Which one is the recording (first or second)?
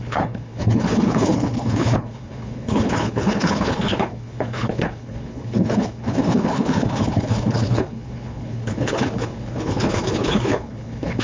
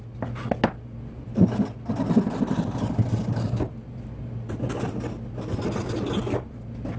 second